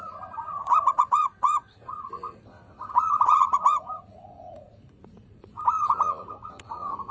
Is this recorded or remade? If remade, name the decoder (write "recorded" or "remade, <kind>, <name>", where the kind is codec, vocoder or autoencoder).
remade, vocoder, Vocos